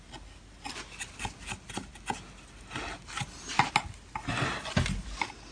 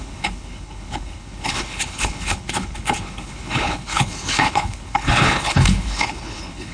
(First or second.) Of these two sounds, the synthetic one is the second